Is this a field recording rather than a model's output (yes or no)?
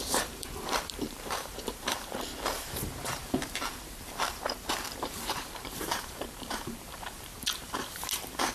no